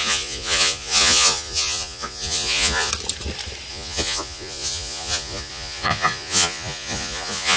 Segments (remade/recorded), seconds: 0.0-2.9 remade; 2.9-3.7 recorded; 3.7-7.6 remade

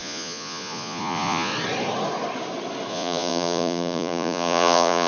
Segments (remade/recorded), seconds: 0.0-1.5 remade; 1.5-2.9 recorded; 2.9-5.1 remade

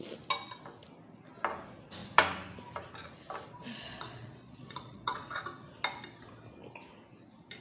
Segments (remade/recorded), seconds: 0.0-3.6 recorded; 3.6-5.4 remade; 5.4-7.6 recorded

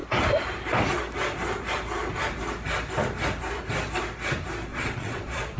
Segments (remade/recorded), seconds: 0.0-4.7 recorded; 4.7-5.6 remade

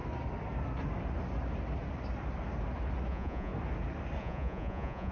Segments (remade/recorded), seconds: 0.0-3.1 recorded; 3.1-3.5 remade; 3.5-4.2 recorded; 4.2-5.1 remade

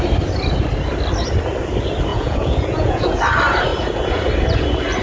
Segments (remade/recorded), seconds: 0.0-2.1 recorded; 2.1-3.2 remade; 3.2-3.7 recorded; 3.7-4.3 remade; 4.3-5.0 recorded

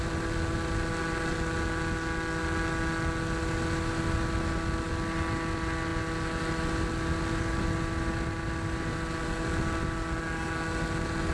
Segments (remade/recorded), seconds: 0.0-11.3 recorded